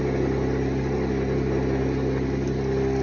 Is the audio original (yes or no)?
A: yes